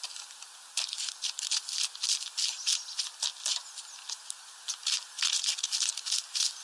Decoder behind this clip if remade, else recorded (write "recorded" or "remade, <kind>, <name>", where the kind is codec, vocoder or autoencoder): recorded